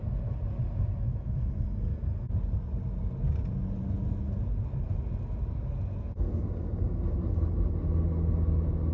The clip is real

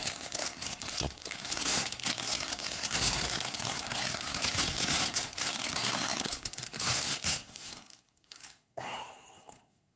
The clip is fake